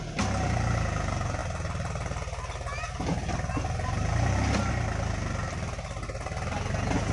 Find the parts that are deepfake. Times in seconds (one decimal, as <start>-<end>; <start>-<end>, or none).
none